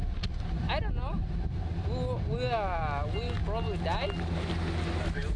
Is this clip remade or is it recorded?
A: recorded